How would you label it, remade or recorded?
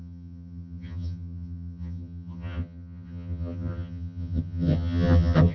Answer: remade